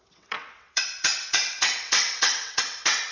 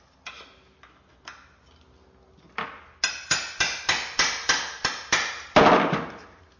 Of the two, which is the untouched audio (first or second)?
second